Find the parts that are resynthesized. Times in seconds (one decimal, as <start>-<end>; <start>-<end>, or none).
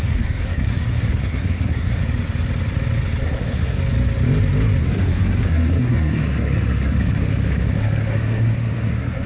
0.0-2.0; 3.2-3.8; 4.8-9.3